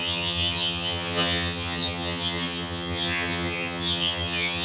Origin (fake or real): fake